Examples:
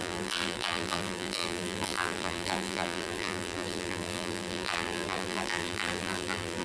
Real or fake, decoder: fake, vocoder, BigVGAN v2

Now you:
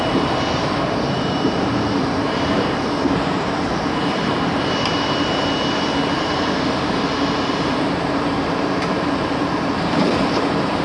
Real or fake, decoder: fake, vocoder, BigVGAN v2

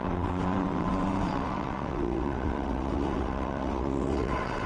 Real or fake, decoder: fake, vocoder, WaveNeXt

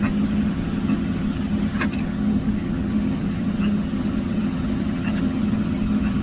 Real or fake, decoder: fake, vocoder, HiFi-GAN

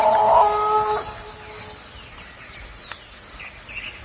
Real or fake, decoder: real